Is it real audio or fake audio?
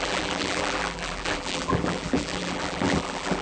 fake